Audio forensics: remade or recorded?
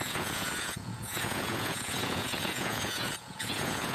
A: remade